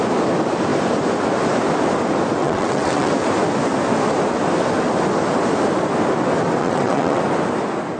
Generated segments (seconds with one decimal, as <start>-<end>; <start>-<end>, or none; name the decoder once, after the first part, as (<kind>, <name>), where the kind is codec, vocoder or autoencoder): 2.4-3.1 (vocoder, WaveNeXt); 6.6-7.2